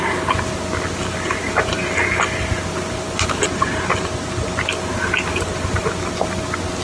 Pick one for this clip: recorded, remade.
recorded